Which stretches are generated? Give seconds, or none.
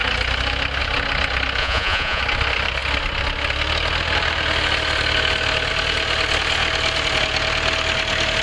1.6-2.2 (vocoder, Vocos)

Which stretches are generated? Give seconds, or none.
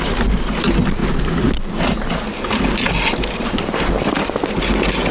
none